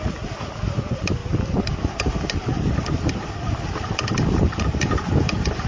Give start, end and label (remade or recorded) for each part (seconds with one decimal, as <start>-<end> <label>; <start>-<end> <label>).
0.0-5.7 remade